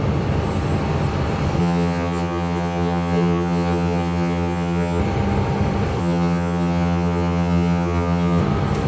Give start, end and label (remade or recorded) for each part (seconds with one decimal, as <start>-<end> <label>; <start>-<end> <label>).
0.0-1.6 recorded; 1.6-5.0 remade; 5.0-6.0 recorded; 6.0-8.4 remade; 8.4-8.9 recorded